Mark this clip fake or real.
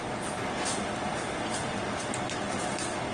real